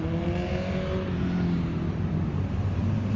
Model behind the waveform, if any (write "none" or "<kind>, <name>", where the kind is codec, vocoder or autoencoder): none